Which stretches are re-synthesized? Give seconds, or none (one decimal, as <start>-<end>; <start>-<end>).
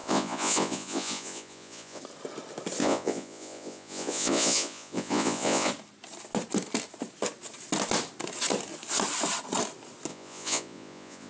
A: 0.0-2.0; 2.8-5.7; 10.1-11.3